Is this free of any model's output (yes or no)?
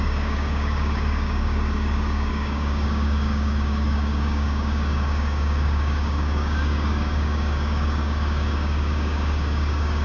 no